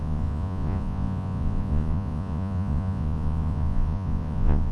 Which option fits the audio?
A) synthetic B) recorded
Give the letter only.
A